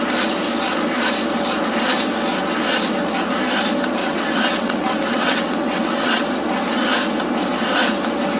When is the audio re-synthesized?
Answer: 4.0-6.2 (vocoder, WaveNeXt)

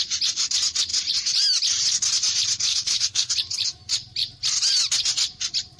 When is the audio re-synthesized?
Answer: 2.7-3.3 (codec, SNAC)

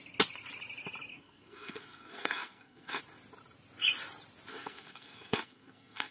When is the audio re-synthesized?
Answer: 1.1-3.0 (codec, SNAC); 4.5-6.1

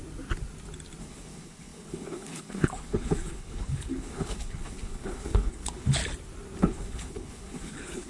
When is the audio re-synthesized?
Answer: 1.0-6.0 (codec, HILCodec); 6.6-8.1

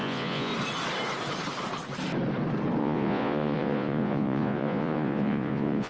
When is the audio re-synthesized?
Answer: 0.0-0.5 (vocoder, Vocos); 2.8-5.9